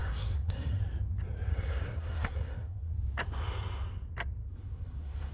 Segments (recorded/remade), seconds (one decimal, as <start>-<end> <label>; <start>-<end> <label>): 0.0-0.8 remade; 0.8-1.5 recorded; 1.5-2.9 remade; 2.9-4.4 recorded; 4.4-5.3 remade